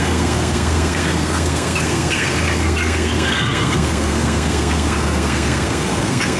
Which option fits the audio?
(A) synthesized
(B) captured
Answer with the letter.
A